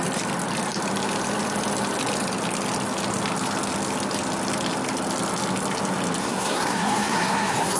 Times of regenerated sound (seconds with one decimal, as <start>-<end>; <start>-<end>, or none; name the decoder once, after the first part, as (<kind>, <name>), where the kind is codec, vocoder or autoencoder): 6.2-7.8 (codec, SNAC)